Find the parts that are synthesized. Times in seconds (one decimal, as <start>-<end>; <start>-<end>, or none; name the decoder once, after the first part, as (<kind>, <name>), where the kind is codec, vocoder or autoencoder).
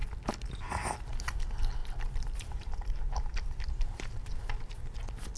1.8-5.0 (vocoder, BigVGAN v2)